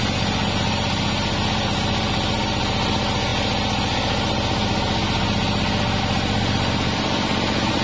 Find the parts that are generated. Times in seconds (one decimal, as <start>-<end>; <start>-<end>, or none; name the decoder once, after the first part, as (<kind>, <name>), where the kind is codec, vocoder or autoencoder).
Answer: none